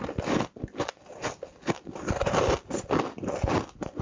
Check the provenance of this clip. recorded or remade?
recorded